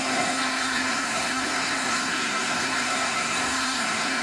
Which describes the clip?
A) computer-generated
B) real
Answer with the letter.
A